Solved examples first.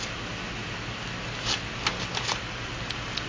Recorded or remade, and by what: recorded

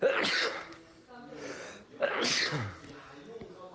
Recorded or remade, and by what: recorded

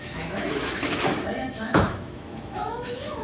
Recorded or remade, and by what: remade, autoencoder, DAC-VAE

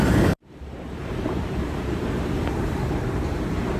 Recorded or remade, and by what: remade, vocoder, BigVGAN v2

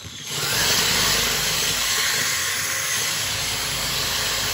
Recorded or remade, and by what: remade, codec, DAC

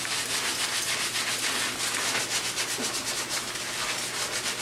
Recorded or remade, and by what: recorded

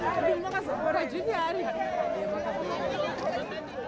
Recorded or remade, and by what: recorded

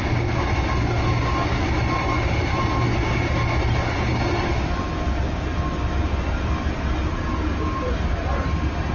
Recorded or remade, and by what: recorded